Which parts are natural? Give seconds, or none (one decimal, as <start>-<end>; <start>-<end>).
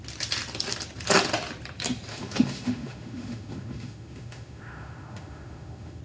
0.0-2.1